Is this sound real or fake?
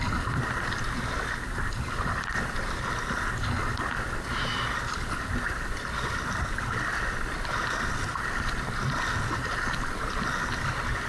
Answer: real